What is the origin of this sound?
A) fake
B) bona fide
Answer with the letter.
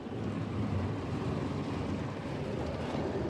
B